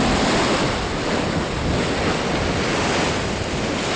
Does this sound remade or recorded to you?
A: recorded